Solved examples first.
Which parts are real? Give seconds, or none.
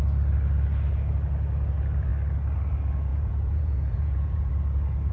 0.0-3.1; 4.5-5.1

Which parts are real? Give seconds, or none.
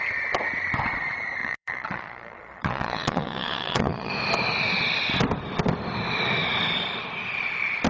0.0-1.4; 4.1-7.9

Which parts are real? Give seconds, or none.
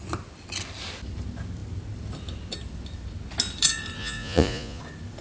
0.0-4.0; 4.8-5.2